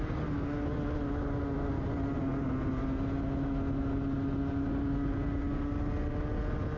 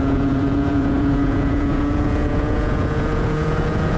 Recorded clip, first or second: first